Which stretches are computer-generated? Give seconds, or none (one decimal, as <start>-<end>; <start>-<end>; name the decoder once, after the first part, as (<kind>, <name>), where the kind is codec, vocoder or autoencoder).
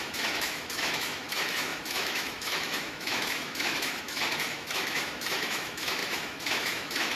0.0-7.2 (autoencoder, DAC-VAE)